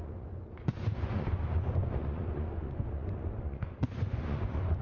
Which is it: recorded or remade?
remade